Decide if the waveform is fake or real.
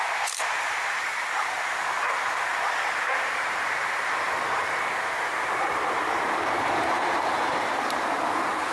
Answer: fake